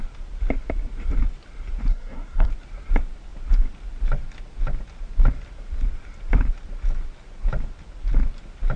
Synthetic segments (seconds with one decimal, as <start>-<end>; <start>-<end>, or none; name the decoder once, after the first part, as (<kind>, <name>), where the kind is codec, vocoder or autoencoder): 1.9-2.5 (codec, SNAC)

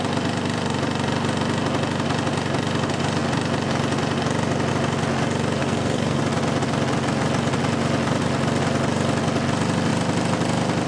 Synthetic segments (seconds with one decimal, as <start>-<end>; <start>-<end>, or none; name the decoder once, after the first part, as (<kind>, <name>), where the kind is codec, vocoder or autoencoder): 5.6-6.2 (codec, SNAC)

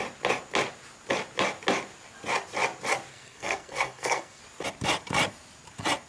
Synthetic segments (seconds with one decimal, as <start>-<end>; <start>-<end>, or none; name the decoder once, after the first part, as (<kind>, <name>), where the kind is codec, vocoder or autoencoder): 3.1-4.4 (codec, SNAC)

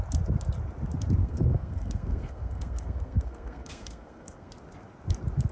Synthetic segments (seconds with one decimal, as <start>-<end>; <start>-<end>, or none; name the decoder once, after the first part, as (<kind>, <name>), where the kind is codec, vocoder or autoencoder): 1.2-4.5 (codec, SNAC)

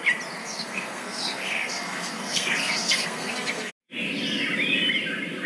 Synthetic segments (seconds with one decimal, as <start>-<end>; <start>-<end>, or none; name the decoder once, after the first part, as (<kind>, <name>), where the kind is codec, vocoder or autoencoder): 0.4-3.7 (codec, SNAC)